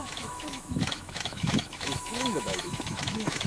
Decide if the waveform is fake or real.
fake